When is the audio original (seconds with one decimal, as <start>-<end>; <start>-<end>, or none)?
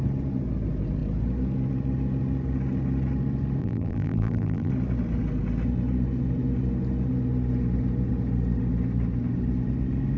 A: 0.0-3.6; 4.7-10.2